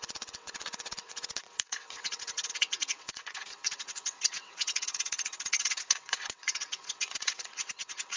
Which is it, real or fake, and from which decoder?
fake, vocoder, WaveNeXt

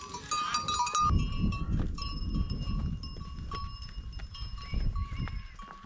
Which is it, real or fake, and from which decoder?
real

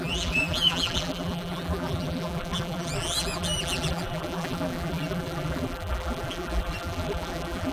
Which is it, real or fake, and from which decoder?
fake, vocoder, BigVGAN v2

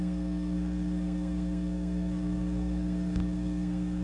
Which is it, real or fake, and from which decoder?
fake, codec, SNAC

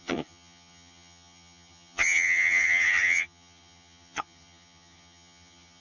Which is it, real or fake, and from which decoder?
fake, vocoder, HiFi-GAN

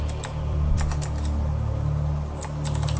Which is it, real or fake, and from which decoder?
fake, vocoder, BigVGAN v2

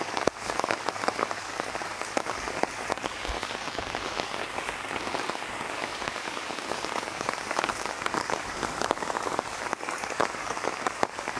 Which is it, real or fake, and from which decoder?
fake, codec, DAC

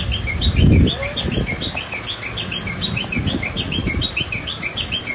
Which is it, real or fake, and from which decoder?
real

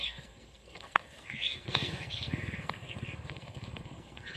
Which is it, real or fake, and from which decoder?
fake, codec, SNAC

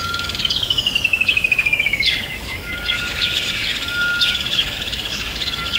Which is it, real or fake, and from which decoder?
fake, codec, DAC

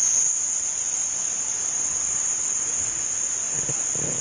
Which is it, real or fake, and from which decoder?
real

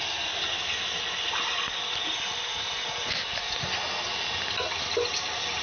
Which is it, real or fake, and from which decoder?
real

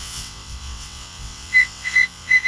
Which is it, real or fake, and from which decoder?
fake, vocoder, WaveNeXt